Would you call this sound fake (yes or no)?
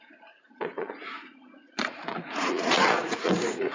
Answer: yes